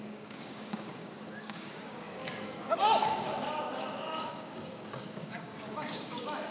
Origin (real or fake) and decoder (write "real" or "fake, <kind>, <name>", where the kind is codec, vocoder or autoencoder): fake, codec, DAC